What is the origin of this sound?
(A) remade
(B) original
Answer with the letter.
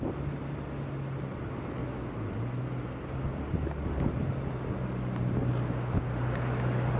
B